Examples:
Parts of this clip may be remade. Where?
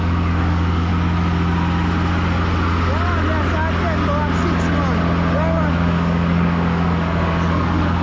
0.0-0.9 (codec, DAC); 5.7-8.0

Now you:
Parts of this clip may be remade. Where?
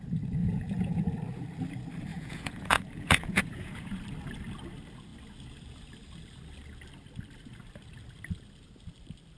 0.4-1.0 (vocoder, Vocos); 2.1-4.0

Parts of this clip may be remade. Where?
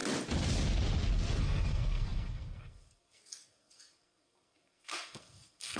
1.4-5.8 (codec, SNAC)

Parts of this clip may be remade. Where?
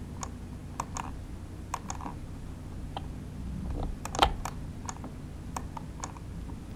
none